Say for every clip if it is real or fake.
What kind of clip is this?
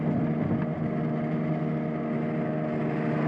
real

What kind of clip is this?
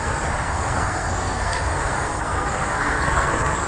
fake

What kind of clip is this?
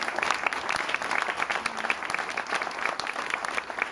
real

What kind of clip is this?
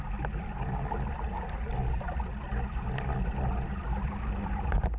real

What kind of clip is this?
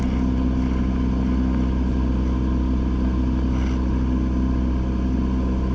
real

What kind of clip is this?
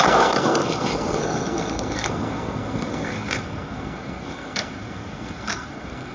fake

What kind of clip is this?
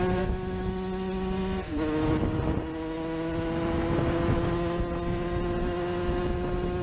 real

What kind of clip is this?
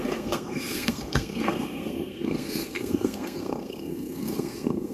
fake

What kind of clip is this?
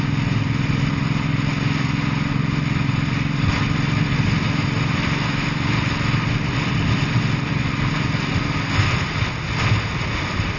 real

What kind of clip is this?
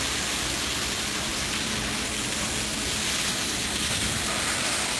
real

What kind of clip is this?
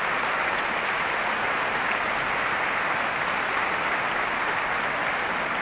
real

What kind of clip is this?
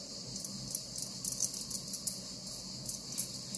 real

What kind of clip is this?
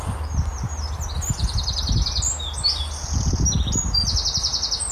real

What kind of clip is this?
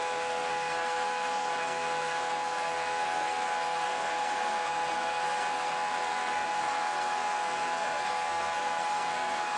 fake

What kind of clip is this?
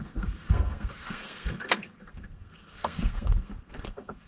fake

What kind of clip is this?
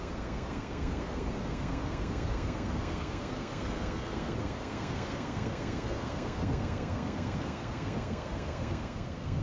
fake